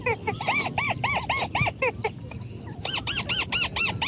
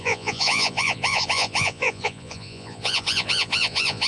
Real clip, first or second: first